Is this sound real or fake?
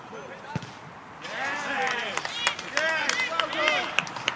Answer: real